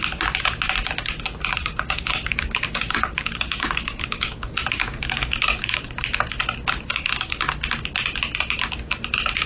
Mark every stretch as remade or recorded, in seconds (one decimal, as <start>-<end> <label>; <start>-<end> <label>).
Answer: 0.0-1.6 recorded; 1.6-5.9 remade; 5.9-6.9 recorded; 6.9-7.4 remade; 7.4-9.5 recorded